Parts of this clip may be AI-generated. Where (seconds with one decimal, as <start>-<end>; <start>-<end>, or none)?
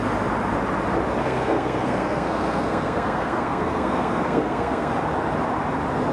1.2-4.9